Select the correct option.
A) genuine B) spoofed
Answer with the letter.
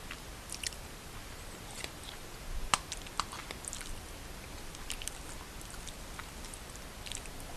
A